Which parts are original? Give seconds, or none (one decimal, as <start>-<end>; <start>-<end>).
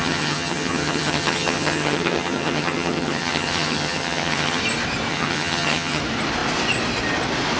4.6-5.1; 6.0-7.6